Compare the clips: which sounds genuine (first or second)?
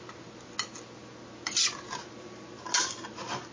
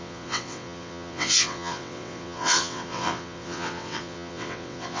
first